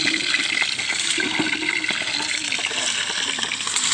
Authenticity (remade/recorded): recorded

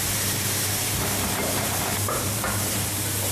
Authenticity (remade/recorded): remade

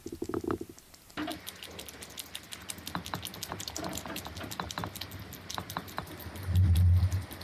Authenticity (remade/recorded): recorded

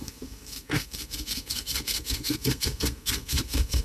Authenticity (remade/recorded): remade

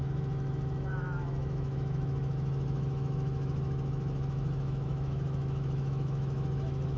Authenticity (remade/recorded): remade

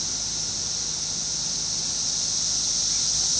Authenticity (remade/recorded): recorded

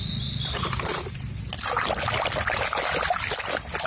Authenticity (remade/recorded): recorded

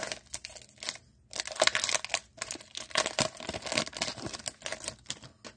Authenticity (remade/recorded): recorded